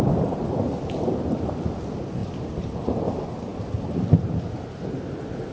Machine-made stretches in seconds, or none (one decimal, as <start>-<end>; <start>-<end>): 0.0-3.5; 4.2-5.5